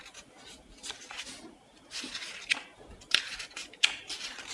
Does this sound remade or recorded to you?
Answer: recorded